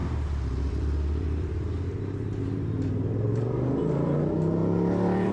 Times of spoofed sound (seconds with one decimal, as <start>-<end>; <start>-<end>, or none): 0.0-2.4; 4.6-5.3